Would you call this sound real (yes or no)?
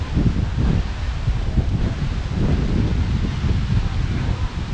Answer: yes